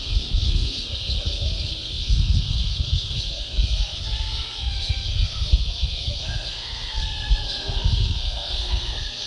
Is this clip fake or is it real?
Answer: fake